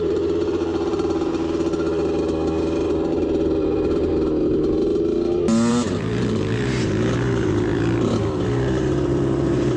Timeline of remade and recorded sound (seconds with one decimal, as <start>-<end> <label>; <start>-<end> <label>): 0.0-1.7 remade; 1.7-2.9 recorded; 2.9-4.1 remade; 4.1-5.7 recorded; 5.7-9.8 remade